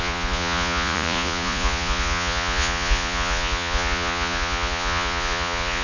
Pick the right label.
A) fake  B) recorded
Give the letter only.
A